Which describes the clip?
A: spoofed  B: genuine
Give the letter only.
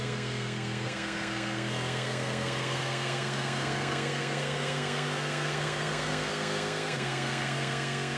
A